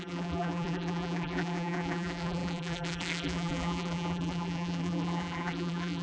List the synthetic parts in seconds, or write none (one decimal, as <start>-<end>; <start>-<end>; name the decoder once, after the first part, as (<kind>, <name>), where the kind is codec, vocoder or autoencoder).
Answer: 0.0-6.0 (vocoder, BigVGAN v2)